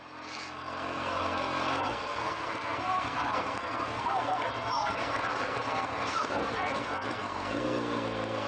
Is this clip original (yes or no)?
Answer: no